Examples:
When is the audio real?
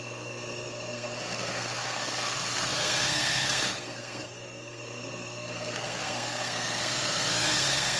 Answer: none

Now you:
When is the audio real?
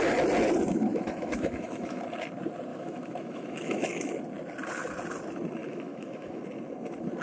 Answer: 0.0-0.9; 2.0-2.7; 4.1-5.6; 6.4-7.2